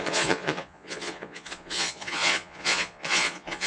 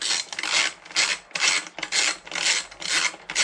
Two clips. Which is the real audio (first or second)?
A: second